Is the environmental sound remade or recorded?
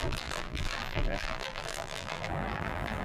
remade